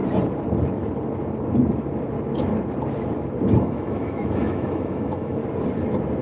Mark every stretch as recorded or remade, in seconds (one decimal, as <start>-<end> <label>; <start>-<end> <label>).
0.0-3.6 recorded; 3.6-5.4 remade; 5.4-6.2 recorded